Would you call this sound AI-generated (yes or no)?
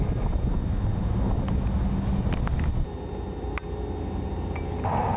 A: no